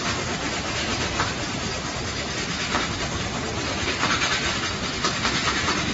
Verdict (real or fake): real